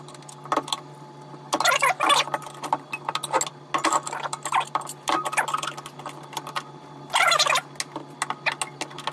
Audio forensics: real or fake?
real